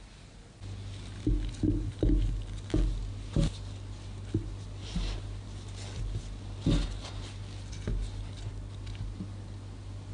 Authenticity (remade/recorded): recorded